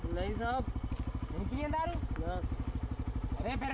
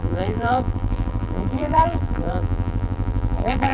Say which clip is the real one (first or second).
first